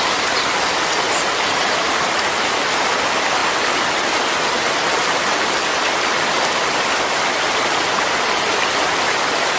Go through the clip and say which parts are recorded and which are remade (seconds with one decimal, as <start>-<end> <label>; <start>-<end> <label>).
0.0-9.6 recorded